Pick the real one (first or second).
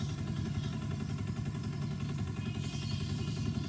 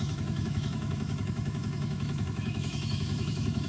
first